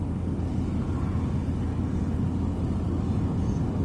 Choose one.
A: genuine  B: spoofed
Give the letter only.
A